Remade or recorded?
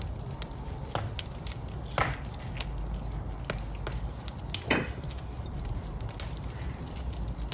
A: recorded